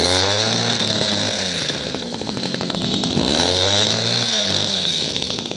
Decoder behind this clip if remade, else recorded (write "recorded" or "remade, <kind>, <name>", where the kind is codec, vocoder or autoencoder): remade, codec, SNAC